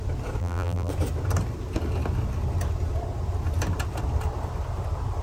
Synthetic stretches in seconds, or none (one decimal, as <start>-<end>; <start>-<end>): 0.4-0.9